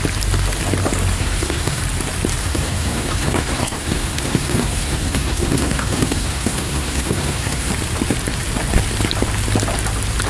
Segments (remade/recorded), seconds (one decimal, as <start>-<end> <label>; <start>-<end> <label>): 0.0-1.2 recorded; 1.2-1.8 remade; 1.8-2.4 recorded; 2.4-7.7 remade; 7.7-10.3 recorded